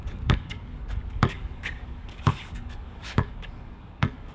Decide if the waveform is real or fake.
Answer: fake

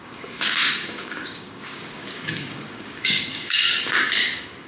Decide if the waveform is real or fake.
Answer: fake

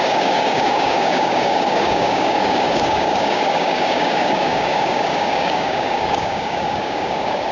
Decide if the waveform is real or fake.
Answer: fake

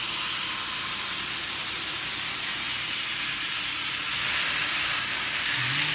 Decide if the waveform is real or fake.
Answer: real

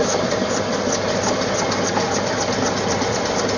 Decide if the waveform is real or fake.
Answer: real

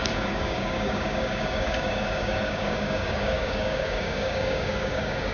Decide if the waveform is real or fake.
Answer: fake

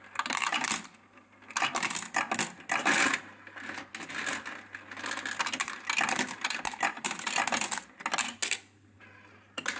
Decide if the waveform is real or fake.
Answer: real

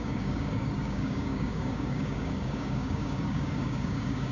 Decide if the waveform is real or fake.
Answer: fake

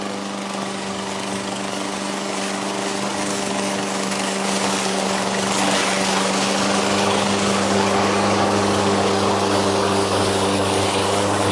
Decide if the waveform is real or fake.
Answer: fake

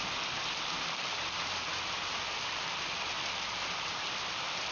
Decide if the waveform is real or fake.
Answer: real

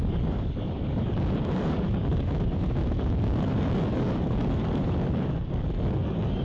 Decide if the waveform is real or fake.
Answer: fake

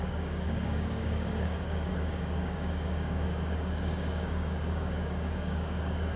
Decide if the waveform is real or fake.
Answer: fake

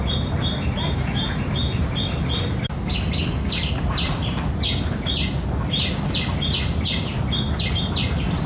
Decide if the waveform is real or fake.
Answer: real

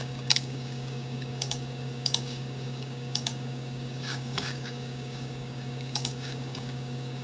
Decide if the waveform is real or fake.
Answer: fake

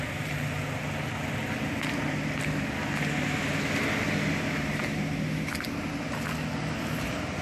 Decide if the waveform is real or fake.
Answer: real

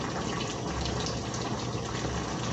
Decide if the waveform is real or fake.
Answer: real